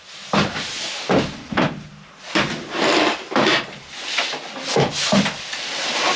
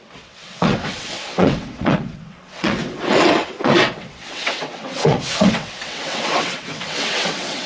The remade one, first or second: second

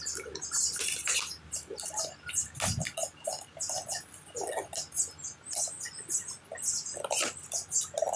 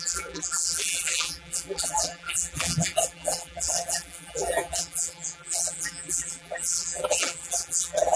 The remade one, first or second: second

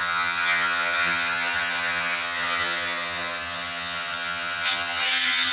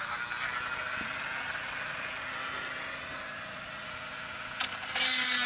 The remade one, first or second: first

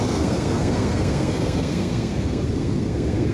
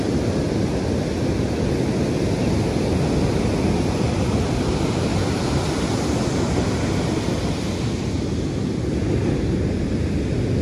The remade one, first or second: first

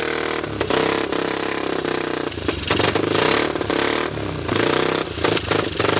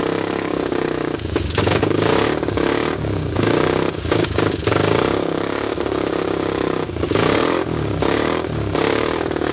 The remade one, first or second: second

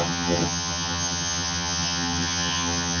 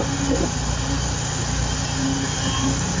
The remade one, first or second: first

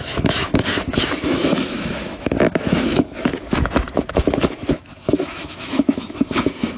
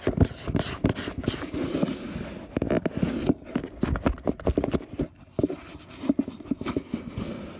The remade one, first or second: first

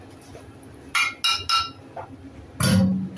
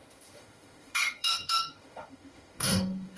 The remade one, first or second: second